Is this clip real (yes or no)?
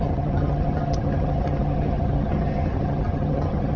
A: no